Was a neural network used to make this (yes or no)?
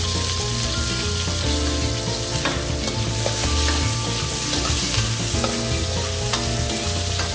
no